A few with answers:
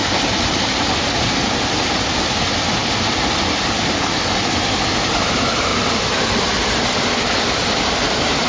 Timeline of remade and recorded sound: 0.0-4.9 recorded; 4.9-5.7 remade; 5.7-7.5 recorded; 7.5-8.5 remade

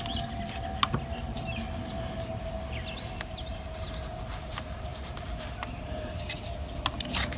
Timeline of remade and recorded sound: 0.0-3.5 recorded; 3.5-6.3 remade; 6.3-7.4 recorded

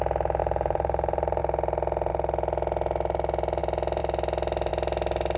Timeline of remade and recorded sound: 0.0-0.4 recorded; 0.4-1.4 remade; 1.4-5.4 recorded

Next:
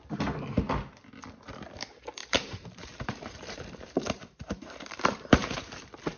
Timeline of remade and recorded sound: 0.0-2.2 recorded; 2.2-5.7 remade; 5.7-6.2 recorded

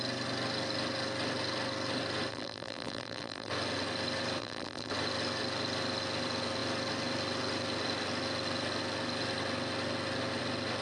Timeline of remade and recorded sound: 0.0-2.3 recorded; 2.3-3.5 remade; 3.5-4.4 recorded; 4.4-4.9 remade; 4.9-10.8 recorded

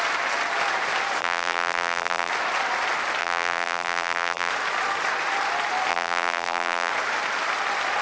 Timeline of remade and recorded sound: 0.0-1.2 recorded; 1.2-2.3 remade; 2.3-3.2 recorded; 3.2-4.5 remade; 4.5-5.9 recorded; 5.9-6.9 remade; 6.9-8.0 recorded